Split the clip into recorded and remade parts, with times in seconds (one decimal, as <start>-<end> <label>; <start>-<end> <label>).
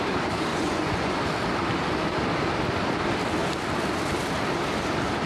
0.0-0.5 recorded; 0.5-1.2 remade; 1.2-5.3 recorded